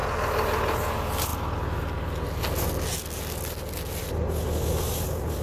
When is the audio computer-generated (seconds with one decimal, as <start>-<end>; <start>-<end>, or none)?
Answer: none